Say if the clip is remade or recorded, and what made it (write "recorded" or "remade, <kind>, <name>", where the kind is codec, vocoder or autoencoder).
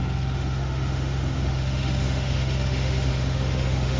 remade, autoencoder, DAC-VAE